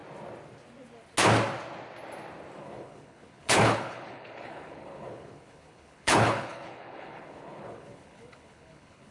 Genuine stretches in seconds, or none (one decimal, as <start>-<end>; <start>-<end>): 0.0-2.6